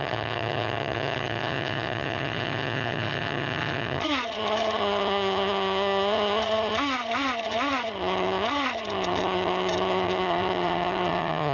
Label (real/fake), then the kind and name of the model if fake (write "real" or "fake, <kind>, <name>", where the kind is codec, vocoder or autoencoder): fake, vocoder, HiFi-GAN